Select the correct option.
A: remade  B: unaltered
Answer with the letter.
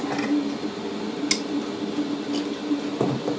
B